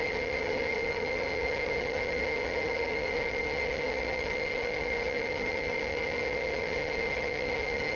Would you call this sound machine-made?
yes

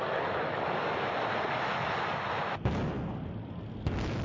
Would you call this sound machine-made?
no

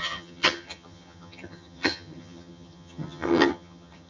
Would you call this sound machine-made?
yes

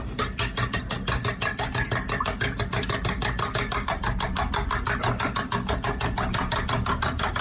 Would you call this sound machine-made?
no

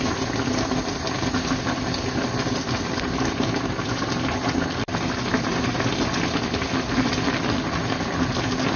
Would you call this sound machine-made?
no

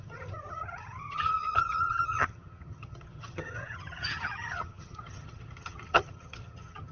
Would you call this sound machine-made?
yes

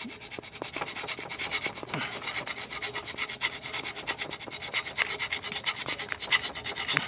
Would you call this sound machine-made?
no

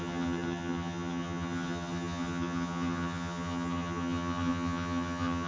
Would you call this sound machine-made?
yes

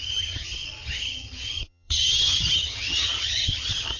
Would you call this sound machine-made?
yes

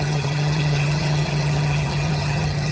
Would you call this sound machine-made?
yes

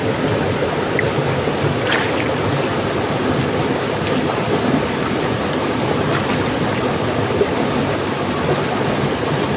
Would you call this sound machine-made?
no